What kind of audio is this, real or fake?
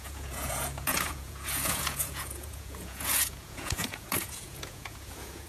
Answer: fake